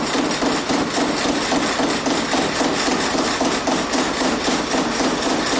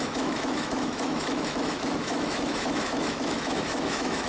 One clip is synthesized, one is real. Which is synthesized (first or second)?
second